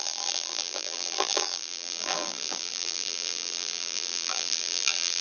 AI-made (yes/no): yes